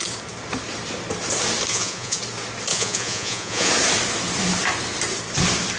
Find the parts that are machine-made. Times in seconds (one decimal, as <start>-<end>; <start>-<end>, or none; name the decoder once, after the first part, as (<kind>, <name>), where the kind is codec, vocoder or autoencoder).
1.7-2.2 (vocoder, Vocos); 2.7-3.7

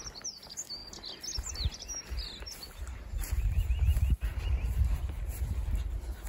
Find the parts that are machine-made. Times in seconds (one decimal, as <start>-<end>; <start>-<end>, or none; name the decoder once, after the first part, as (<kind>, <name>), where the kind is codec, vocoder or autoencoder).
4.3-5.0 (vocoder, BigVGAN v2)

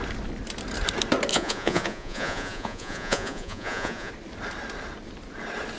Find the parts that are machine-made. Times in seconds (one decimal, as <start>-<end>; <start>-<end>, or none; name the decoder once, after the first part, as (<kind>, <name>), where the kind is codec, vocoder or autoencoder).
1.3-4.1 (vocoder, Vocos)

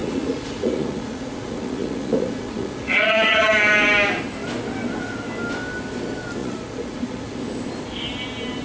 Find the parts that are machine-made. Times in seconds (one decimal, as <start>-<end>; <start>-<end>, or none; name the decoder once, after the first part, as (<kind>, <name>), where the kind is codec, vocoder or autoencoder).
0.0-3.5 (vocoder, Vocos); 6.4-7.4

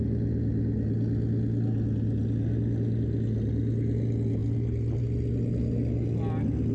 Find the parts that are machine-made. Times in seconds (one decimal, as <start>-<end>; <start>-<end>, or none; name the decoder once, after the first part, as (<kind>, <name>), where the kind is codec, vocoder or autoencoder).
none

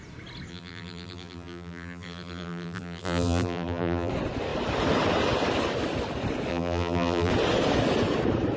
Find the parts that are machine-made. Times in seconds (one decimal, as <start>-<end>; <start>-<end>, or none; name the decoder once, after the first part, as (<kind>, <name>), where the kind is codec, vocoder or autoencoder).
0.5-4.1 (vocoder, BigVGAN v2); 6.5-7.3

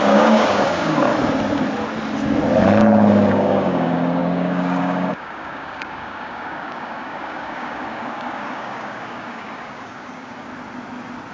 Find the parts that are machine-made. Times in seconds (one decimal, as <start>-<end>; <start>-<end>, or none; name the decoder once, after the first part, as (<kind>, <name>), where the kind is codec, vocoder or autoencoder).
0.0-1.1 (codec, DAC); 3.3-10.5